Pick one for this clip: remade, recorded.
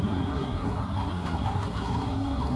remade